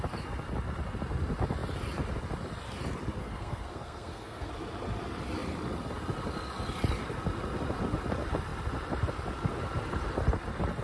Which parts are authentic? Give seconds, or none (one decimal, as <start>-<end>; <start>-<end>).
0.0-3.2; 4.5-10.8